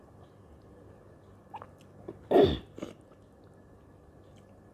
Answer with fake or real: real